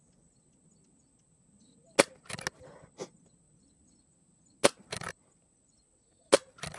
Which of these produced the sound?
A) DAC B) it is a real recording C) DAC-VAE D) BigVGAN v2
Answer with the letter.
B